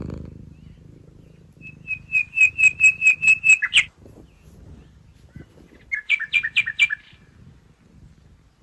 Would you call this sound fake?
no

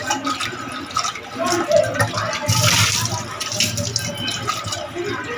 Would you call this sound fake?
no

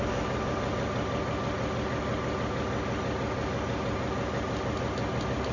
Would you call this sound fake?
no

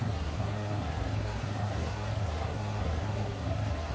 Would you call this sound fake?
yes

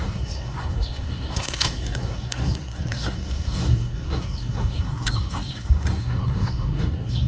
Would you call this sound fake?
yes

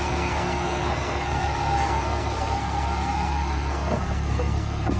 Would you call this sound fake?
yes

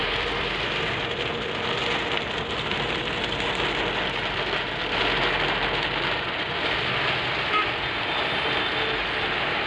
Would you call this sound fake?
no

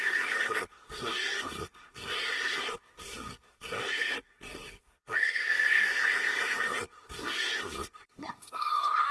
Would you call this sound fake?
yes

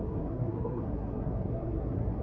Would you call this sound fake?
yes